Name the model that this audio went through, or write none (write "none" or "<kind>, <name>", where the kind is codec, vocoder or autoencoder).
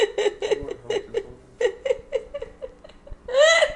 none